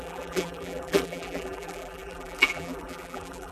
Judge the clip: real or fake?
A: fake